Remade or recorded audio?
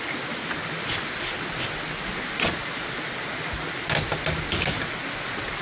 recorded